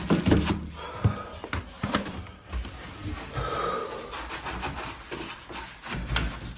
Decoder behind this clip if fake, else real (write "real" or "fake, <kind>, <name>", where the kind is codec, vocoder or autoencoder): real